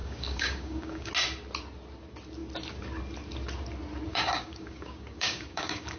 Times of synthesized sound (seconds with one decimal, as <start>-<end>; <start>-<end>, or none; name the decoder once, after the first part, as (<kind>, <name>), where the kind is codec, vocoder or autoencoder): 0.0-1.1 (codec, DAC); 4.1-6.0